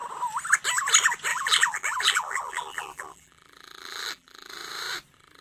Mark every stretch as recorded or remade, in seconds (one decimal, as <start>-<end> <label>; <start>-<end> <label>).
0.0-1.3 recorded; 1.3-4.5 remade; 4.5-5.4 recorded